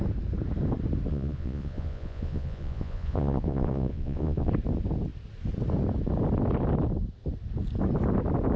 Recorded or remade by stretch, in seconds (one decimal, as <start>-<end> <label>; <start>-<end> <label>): 0.0-1.1 recorded; 1.1-4.5 remade; 4.5-8.6 recorded